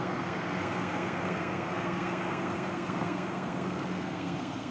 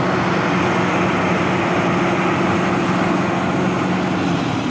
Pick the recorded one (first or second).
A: second